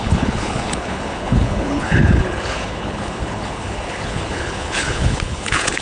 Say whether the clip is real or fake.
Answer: fake